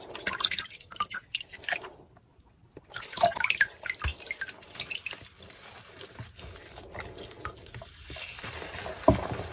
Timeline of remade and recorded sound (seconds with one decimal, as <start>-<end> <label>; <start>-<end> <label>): 0.0-9.5 recorded

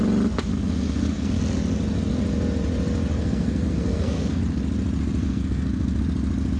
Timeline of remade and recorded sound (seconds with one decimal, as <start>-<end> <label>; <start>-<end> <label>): 0.0-0.5 recorded; 0.5-1.4 remade; 1.4-3.1 recorded; 3.1-4.4 remade; 4.4-5.2 recorded; 5.2-6.0 remade; 6.0-6.6 recorded